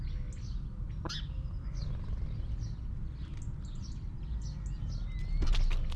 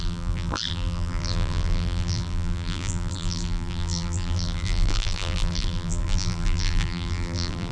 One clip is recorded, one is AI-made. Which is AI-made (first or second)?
second